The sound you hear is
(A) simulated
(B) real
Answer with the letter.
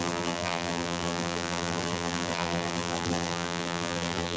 A